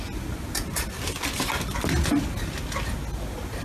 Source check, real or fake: real